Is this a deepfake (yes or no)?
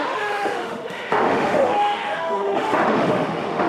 yes